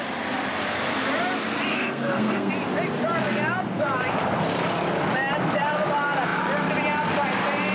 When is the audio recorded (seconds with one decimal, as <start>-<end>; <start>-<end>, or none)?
0.0-1.7; 2.5-7.7